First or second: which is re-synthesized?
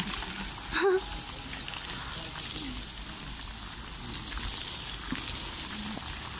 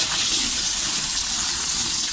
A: second